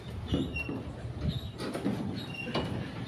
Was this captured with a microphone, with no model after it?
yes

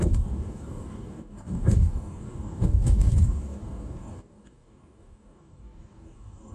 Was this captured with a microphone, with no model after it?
no